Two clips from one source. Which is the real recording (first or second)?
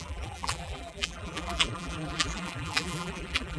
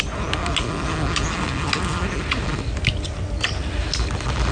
second